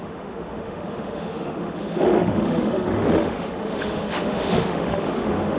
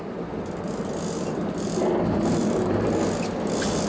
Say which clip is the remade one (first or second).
first